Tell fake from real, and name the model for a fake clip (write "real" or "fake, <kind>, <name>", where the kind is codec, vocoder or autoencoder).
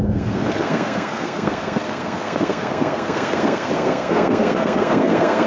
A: fake, codec, SNAC